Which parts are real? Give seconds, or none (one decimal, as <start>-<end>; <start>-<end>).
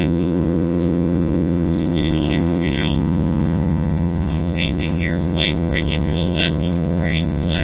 none